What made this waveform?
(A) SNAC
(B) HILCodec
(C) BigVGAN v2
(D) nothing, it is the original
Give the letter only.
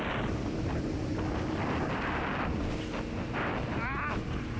D